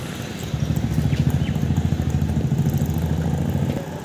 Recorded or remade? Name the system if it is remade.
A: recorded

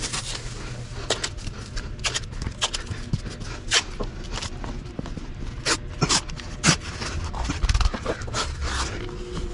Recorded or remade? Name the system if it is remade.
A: recorded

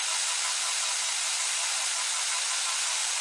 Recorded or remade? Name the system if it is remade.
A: recorded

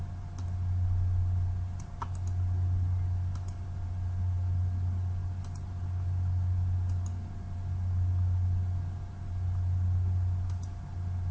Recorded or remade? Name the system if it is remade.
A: recorded